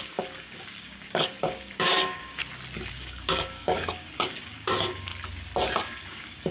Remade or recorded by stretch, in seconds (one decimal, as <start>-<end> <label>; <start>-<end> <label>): 0.0-2.4 remade; 2.4-2.9 recorded; 2.9-5.1 remade; 5.1-5.8 recorded; 5.8-6.5 remade